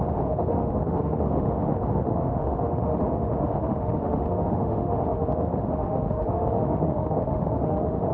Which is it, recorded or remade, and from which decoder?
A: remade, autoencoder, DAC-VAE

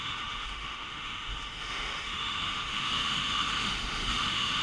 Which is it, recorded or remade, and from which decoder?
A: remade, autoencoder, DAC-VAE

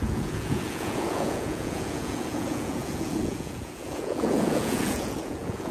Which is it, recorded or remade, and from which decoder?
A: remade, vocoder, Vocos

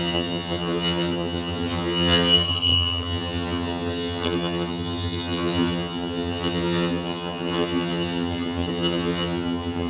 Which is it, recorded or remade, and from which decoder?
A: remade, vocoder, HiFi-GAN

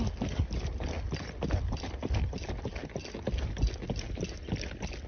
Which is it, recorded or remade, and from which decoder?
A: recorded